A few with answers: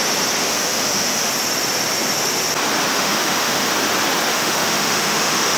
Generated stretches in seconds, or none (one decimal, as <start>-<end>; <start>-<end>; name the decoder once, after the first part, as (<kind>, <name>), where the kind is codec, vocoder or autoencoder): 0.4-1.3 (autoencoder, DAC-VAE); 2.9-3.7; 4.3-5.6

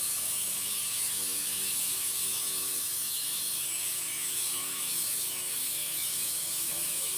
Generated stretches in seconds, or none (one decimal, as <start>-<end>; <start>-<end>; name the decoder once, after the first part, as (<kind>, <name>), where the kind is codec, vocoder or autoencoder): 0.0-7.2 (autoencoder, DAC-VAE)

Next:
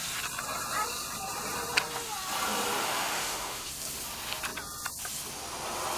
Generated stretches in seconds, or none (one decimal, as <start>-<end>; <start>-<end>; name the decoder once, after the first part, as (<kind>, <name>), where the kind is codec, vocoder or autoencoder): 2.8-3.7 (autoencoder, DAC-VAE)

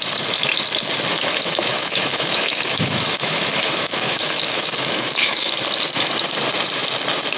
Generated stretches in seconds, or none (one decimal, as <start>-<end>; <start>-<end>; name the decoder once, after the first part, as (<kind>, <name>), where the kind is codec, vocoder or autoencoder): 1.1-5.5 (autoencoder, DAC-VAE)

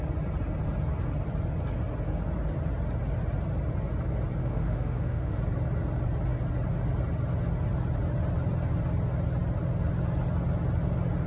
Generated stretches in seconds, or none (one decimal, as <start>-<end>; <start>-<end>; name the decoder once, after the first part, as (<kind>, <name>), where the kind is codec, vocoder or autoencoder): 4.4-5.4 (autoencoder, DAC-VAE)